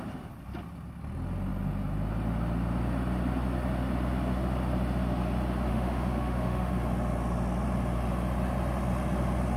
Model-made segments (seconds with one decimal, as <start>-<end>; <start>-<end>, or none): 5.7-6.7